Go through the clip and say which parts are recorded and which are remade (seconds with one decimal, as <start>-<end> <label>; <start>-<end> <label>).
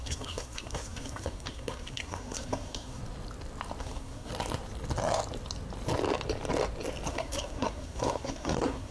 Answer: 0.0-3.0 remade; 3.0-3.8 recorded; 3.8-4.3 remade; 4.3-7.1 recorded; 7.1-8.9 remade